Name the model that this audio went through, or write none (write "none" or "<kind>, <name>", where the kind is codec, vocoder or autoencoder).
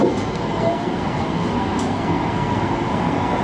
codec, SNAC